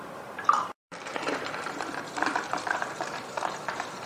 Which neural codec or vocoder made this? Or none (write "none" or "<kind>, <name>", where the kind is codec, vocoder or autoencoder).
vocoder, BigVGAN v2